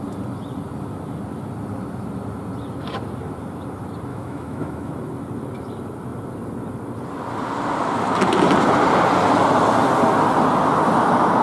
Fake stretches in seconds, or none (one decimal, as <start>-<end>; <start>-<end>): 4.1-4.9